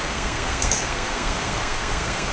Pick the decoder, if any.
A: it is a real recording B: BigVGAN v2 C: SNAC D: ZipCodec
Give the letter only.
C